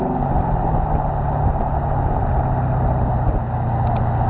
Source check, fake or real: real